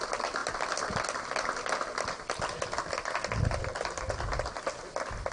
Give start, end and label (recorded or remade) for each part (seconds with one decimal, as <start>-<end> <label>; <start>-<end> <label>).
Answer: 0.0-5.3 recorded

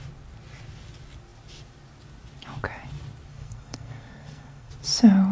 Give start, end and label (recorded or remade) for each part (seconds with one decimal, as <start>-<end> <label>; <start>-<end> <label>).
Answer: 0.0-3.3 recorded; 3.3-4.7 remade; 4.7-5.3 recorded

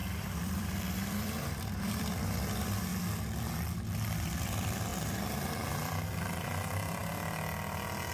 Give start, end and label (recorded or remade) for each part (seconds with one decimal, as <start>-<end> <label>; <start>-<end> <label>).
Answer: 0.0-2.9 remade; 2.9-4.4 recorded; 4.4-4.9 remade; 4.9-5.7 recorded; 5.7-7.0 remade; 7.0-8.1 recorded

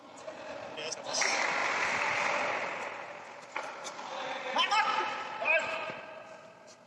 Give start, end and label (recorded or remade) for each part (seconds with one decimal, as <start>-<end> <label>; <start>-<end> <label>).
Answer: 0.0-6.9 recorded

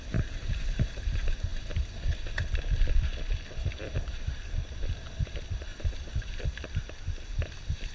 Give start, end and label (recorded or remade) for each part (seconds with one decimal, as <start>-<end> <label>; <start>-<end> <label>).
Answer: 0.0-5.7 recorded; 5.7-6.3 remade; 6.3-7.9 recorded

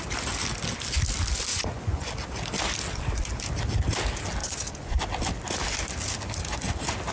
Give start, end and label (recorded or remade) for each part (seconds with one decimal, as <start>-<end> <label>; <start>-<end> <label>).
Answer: 0.0-1.5 recorded; 1.5-2.1 remade; 2.1-4.4 recorded; 4.4-5.0 remade; 5.0-7.1 recorded

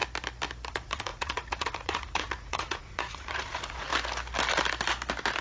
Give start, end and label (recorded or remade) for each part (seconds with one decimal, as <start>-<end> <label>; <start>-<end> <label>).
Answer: 0.0-0.7 recorded; 0.7-3.9 remade; 3.9-5.4 recorded

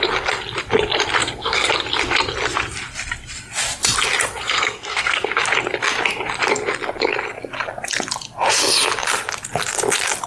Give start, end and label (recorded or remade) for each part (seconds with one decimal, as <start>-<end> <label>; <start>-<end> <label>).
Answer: 0.0-1.2 recorded; 1.2-1.7 remade; 1.7-4.3 recorded; 4.3-5.4 remade; 5.4-10.3 recorded